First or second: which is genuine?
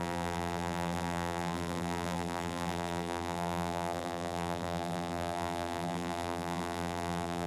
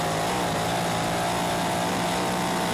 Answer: second